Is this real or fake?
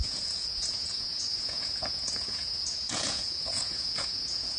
fake